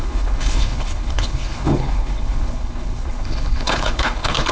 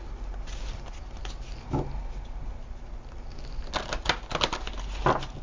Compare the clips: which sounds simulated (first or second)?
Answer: first